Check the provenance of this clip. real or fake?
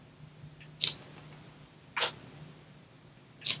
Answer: real